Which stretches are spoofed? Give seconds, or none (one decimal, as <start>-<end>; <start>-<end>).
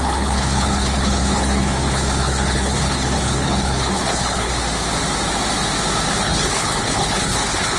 0.0-4.5; 6.2-7.8